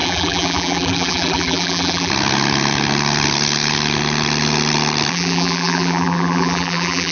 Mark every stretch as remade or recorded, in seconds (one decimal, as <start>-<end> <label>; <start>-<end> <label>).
0.0-2.1 remade; 2.1-5.1 recorded; 5.1-7.1 remade